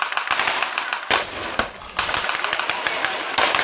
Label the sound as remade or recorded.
recorded